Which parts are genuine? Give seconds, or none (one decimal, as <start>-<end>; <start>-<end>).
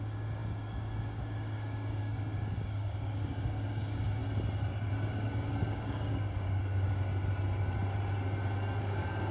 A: 4.2-4.9; 7.1-8.8